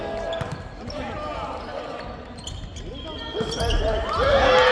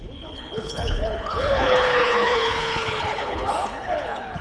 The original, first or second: first